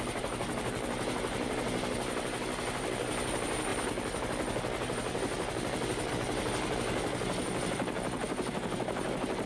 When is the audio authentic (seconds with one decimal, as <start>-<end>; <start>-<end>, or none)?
none